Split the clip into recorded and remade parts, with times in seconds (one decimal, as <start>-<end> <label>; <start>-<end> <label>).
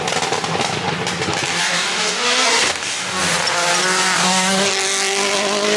0.0-1.6 recorded; 1.6-3.2 remade; 3.2-4.2 recorded; 4.2-4.7 remade; 4.7-5.8 recorded